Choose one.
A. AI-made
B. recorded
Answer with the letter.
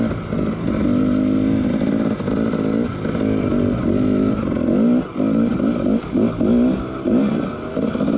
B